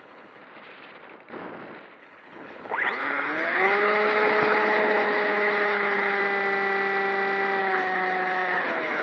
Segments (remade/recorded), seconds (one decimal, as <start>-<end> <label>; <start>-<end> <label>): 0.0-0.4 remade; 0.4-2.0 recorded; 2.0-6.2 remade; 6.2-7.6 recorded; 7.6-9.0 remade